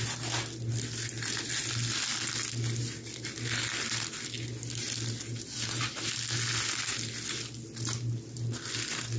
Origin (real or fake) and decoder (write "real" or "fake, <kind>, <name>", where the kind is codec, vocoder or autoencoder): real